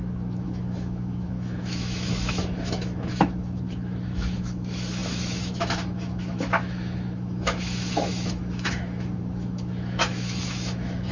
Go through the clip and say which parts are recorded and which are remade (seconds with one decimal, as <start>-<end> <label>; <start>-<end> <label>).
0.0-11.1 remade